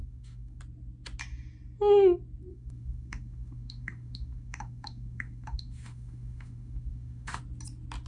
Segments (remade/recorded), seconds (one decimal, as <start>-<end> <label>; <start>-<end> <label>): 0.0-0.6 remade; 0.6-2.5 recorded; 2.5-7.4 remade; 7.4-8.1 recorded